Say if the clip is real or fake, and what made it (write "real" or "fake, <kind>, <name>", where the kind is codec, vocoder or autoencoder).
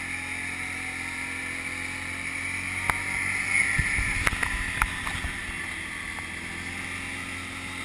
real